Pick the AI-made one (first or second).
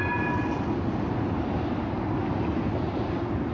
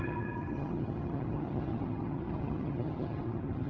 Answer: second